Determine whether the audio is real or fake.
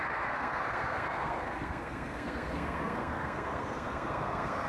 fake